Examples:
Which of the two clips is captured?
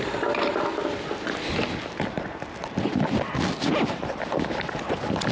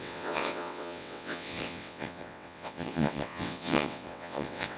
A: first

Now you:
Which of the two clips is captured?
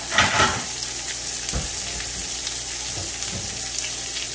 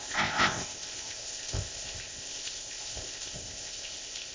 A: first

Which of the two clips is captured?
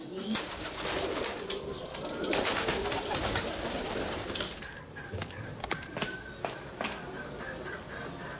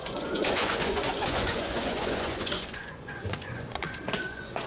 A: first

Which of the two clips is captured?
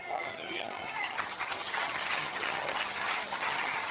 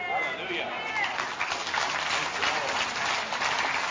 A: second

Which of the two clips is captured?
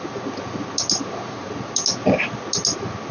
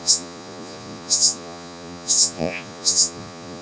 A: first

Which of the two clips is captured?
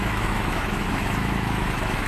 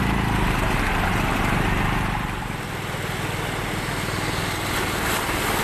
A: second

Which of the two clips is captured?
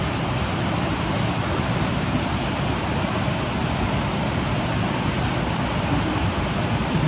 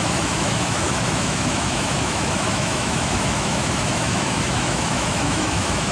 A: first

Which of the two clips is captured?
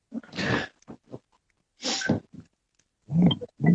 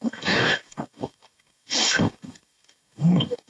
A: first